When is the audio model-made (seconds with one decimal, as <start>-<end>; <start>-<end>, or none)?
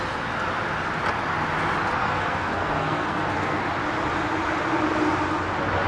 2.0-3.6